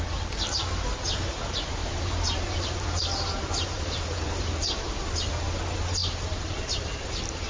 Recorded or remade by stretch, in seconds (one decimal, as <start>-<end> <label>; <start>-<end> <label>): 0.0-1.8 recorded; 1.8-5.4 remade; 5.4-7.5 recorded